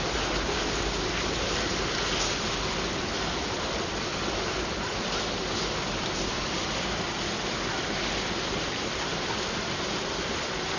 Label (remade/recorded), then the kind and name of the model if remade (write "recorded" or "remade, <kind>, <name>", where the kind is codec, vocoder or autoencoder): recorded